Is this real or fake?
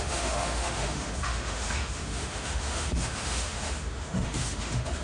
fake